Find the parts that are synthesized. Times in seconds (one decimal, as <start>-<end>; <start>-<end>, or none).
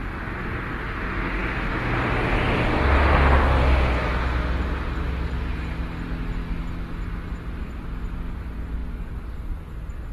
none